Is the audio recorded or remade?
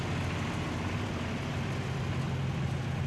recorded